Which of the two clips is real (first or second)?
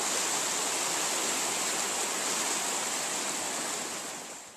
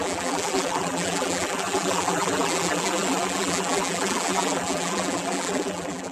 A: first